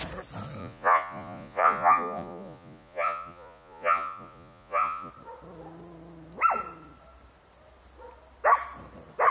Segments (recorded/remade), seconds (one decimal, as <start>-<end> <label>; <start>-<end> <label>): 0.0-0.6 recorded; 0.6-5.1 remade; 5.1-9.3 recorded